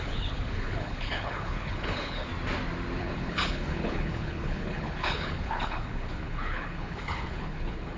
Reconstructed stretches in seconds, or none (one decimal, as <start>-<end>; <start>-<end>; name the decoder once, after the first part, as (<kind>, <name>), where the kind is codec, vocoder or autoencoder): 0.0-2.3 (codec, HILCodec); 3.0-8.0